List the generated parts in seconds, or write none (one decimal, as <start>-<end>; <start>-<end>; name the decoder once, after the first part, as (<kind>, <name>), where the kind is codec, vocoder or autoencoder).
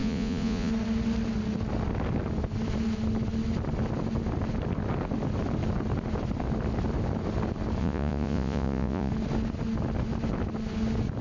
0.0-0.7 (vocoder, Vocos); 7.8-9.1